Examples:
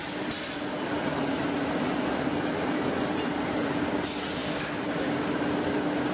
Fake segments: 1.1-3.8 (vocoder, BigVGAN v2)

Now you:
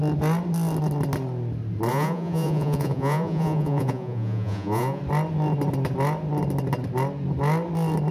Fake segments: 1.9-5.0 (vocoder, Vocos)

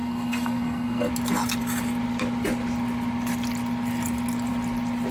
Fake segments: 0.0-1.1 (codec, SNAC)